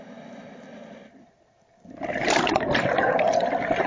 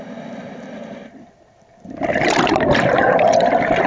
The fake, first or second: second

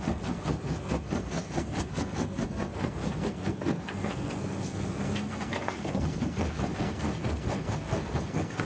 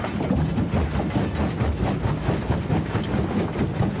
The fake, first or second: first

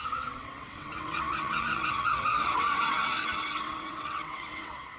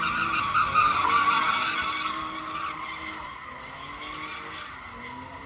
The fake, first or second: first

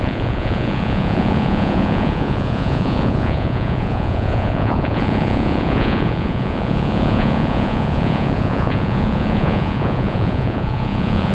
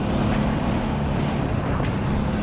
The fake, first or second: first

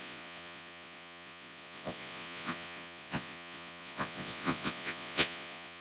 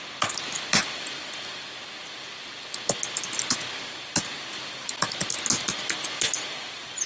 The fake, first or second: first